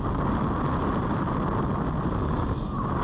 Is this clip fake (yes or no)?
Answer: no